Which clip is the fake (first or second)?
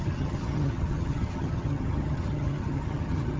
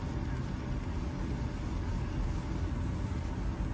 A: first